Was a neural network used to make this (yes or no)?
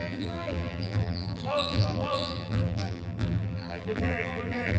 yes